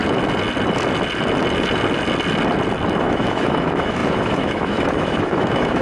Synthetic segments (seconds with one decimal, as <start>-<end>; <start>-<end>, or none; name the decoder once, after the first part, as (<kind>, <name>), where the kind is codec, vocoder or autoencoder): 3.0-5.8 (autoencoder, DAC-VAE)